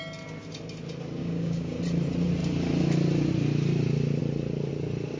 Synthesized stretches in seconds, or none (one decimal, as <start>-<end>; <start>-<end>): 1.2-1.8